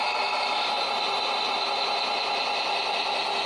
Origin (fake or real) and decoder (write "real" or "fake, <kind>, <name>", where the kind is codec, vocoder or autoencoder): real